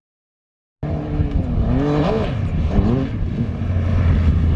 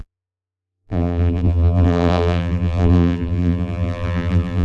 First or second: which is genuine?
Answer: first